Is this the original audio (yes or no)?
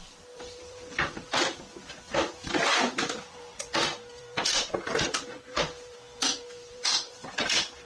no